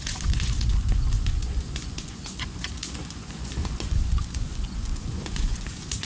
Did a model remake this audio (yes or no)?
yes